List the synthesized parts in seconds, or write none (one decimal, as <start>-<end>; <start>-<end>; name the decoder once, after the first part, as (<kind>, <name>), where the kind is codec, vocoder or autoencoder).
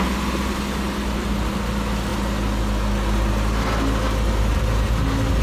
none